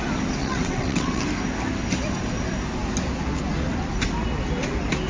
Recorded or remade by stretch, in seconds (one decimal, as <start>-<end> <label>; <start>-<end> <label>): 0.0-0.4 recorded; 0.4-1.2 remade; 1.2-5.1 recorded